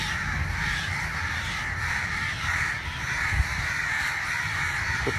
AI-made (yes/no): yes